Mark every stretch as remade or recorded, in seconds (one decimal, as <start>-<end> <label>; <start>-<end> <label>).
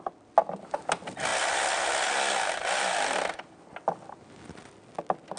0.0-5.4 recorded